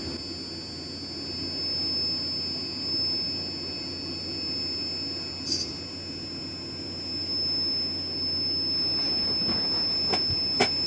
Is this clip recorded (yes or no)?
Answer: yes